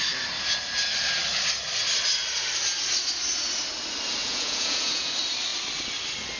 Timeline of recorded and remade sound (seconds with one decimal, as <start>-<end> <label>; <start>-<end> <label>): 0.0-4.2 recorded; 4.2-5.1 remade; 5.1-6.4 recorded